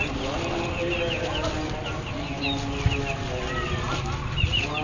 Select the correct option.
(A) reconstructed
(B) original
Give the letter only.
B